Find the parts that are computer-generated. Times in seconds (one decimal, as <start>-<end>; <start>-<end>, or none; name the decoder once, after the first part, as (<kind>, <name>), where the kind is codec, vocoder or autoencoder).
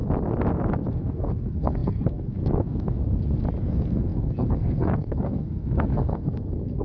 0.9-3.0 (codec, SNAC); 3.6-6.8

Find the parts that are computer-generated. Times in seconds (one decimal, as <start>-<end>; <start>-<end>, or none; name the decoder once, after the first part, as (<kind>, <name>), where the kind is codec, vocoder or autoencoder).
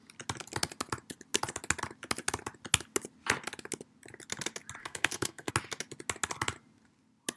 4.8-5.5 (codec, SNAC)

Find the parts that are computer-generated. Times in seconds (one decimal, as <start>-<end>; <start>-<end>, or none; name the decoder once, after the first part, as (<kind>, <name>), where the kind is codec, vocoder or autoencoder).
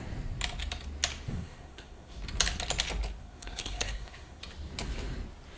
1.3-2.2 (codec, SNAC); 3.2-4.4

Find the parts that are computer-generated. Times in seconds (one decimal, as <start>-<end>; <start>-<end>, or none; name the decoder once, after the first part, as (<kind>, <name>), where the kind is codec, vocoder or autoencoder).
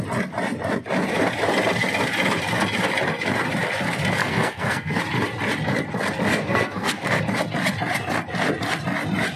4.2-5.0 (codec, SNAC); 6.3-7.2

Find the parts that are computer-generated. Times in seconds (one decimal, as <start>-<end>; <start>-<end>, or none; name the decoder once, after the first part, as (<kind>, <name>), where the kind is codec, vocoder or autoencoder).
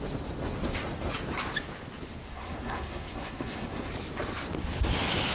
2.3-3.9 (codec, SNAC)